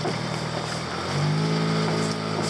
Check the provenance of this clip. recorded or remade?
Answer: recorded